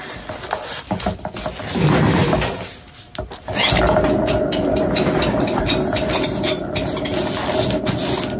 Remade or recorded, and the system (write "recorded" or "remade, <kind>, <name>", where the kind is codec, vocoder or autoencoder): recorded